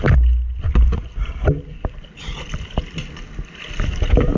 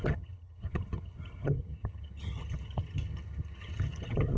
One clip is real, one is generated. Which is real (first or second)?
first